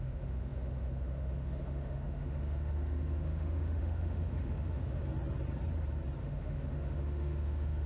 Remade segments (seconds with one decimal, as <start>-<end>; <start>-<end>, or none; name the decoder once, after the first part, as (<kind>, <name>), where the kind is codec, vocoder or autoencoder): 0.0-5.0 (autoencoder, DAC-VAE); 6.2-7.9